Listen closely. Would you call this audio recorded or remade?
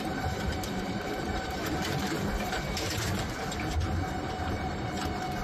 remade